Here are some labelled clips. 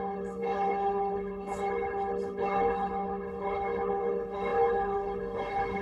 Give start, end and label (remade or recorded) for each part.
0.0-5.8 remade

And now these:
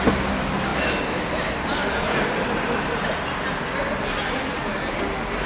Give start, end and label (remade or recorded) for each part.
0.0-5.5 recorded

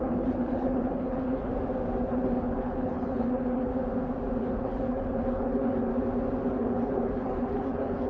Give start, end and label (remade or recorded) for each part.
0.0-1.5 remade; 1.5-2.0 recorded; 2.0-3.7 remade; 3.7-4.4 recorded; 4.4-5.9 remade; 5.9-6.5 recorded; 6.5-8.1 remade

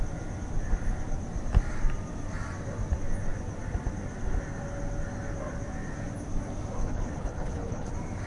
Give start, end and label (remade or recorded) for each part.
0.0-6.8 recorded; 6.8-7.9 remade; 7.9-8.3 recorded

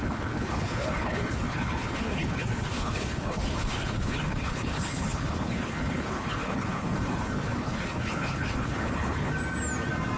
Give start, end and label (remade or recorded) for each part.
0.0-9.3 remade; 9.3-10.2 recorded

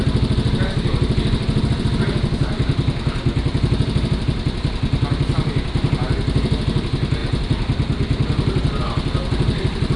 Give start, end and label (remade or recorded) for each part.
0.0-10.0 recorded

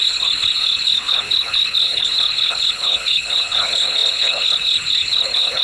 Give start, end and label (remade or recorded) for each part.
0.0-5.6 remade